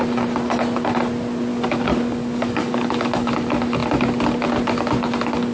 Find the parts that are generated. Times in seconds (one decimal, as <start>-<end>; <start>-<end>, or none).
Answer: 1.5-3.3